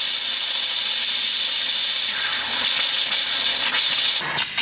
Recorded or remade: recorded